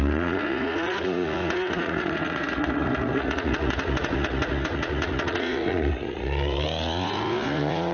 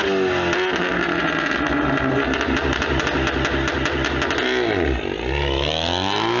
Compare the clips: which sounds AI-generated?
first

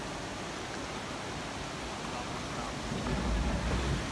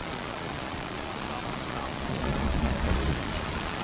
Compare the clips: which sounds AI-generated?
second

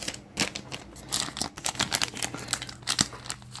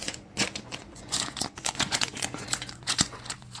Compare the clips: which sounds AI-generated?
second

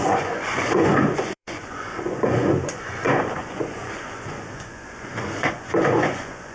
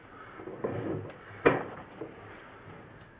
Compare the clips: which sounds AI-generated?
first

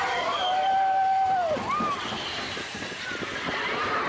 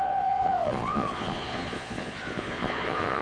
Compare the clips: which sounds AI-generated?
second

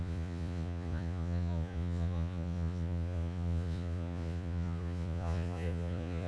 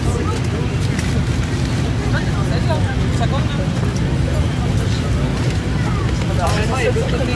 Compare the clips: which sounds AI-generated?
first